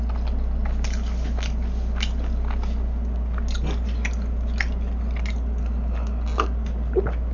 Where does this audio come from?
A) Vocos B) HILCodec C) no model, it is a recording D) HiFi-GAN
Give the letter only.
C